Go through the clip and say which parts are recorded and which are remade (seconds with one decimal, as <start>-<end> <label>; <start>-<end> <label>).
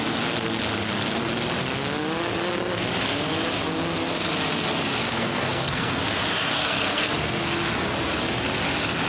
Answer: 0.0-5.0 recorded; 5.0-6.0 remade; 6.0-6.5 recorded; 6.5-7.1 remade; 7.1-9.1 recorded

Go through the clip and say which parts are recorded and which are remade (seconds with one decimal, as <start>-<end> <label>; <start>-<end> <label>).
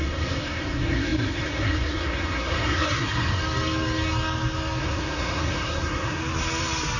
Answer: 0.0-3.4 remade; 3.4-4.8 recorded; 4.8-6.2 remade; 6.2-7.0 recorded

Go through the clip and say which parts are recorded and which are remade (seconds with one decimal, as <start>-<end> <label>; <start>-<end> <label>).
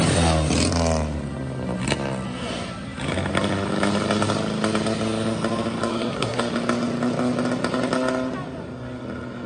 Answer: 0.0-5.9 recorded; 5.9-6.4 remade; 6.4-9.5 recorded